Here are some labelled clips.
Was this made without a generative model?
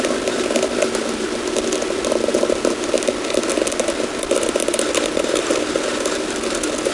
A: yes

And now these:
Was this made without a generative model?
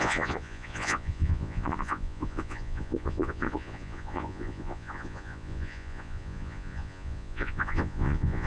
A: no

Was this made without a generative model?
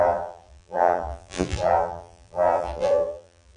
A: no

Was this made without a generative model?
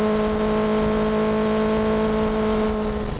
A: yes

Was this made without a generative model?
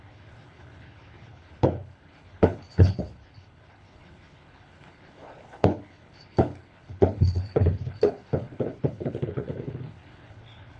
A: no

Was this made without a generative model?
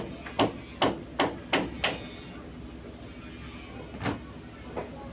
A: yes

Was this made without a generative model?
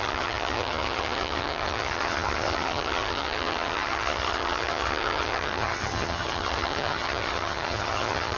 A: no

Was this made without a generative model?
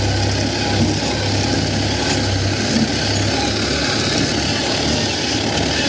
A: yes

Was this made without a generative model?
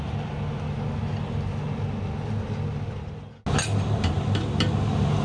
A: yes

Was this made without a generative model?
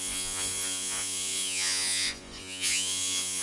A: no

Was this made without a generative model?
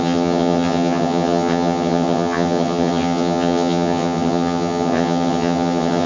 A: no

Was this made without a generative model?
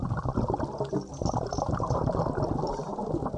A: yes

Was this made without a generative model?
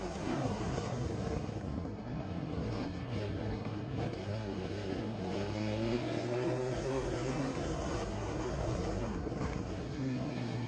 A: no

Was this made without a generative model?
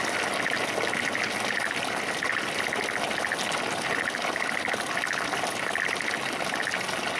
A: yes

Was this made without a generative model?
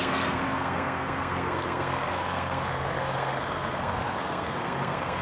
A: no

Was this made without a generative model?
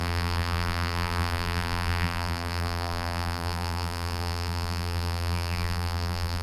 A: no